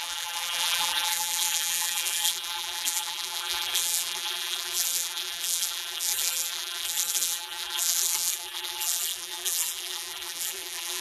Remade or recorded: remade